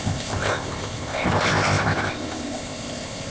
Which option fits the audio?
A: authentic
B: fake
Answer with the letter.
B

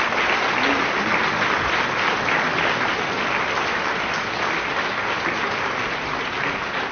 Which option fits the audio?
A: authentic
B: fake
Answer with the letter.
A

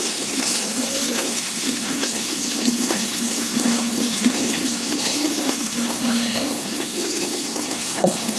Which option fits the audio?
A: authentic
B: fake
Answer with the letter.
B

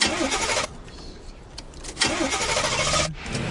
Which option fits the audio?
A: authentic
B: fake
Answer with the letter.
A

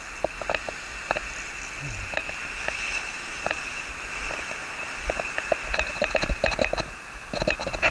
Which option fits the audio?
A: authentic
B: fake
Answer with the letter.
A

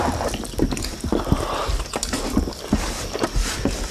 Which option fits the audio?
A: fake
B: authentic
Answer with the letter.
B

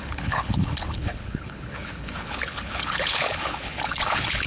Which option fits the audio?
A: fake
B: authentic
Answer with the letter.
A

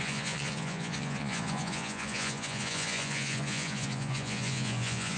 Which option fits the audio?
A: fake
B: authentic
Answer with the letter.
A